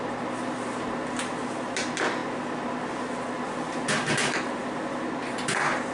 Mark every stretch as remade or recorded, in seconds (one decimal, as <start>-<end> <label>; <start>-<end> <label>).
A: 0.0-5.9 recorded

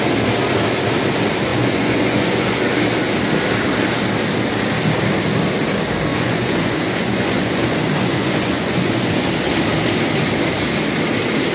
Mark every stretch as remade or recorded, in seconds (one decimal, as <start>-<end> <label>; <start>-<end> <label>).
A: 0.0-1.5 recorded; 1.5-2.6 remade; 2.6-6.1 recorded; 6.1-9.3 remade; 9.3-11.5 recorded

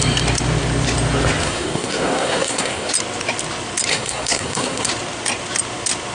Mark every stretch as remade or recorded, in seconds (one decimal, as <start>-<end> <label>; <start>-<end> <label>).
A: 0.0-1.4 recorded; 1.4-2.9 remade; 2.9-3.9 recorded; 3.9-4.9 remade; 4.9-6.1 recorded

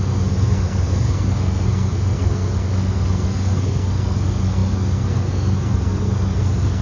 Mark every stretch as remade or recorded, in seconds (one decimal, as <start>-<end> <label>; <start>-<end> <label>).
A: 0.0-6.8 remade

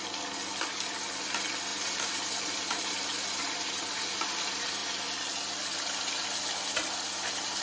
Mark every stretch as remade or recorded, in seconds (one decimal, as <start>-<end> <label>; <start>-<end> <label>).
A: 0.0-1.7 recorded; 1.7-3.4 remade; 3.4-7.6 recorded

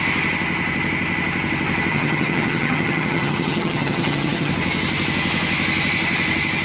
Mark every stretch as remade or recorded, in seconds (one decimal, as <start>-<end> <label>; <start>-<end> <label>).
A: 0.0-1.9 recorded; 1.9-4.5 remade; 4.5-6.6 recorded